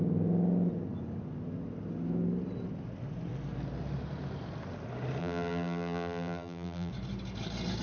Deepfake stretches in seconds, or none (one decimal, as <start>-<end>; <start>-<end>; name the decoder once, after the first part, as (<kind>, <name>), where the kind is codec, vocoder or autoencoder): 5.2-6.9 (vocoder, BigVGAN v2)